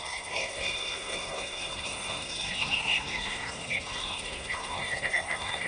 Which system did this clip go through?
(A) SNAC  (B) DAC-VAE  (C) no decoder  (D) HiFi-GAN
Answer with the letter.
A